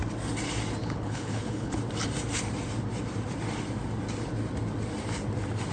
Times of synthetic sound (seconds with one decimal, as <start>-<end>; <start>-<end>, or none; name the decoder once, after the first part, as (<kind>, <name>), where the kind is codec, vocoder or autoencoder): 0.8-1.8 (codec, HILCodec)